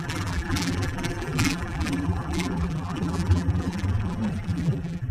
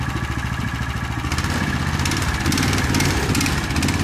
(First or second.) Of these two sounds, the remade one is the first